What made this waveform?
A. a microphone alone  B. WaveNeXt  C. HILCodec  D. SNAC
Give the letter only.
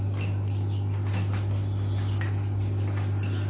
A